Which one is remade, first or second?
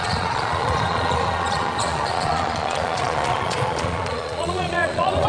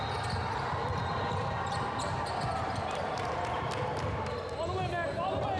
first